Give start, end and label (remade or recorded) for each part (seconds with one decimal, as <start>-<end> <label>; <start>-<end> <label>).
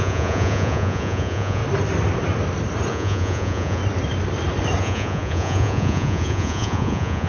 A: 0.0-1.6 remade; 1.6-2.9 recorded; 2.9-3.8 remade; 3.8-4.8 recorded; 4.8-7.3 remade